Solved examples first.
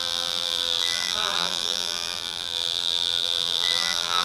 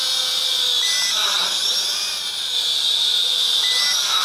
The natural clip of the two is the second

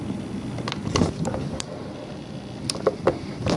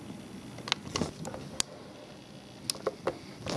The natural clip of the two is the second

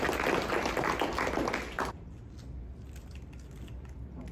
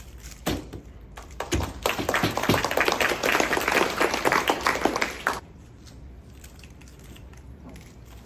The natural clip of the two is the first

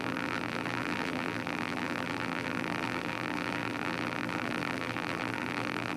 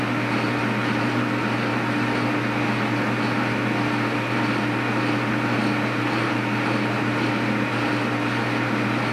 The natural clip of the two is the second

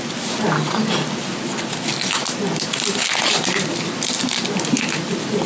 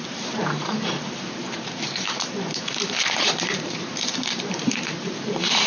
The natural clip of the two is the first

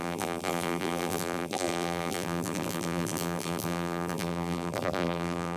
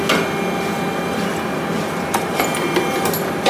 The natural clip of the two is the second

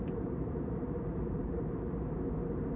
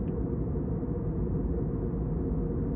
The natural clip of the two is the second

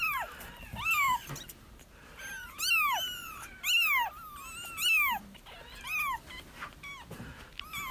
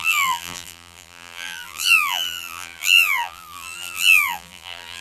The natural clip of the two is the first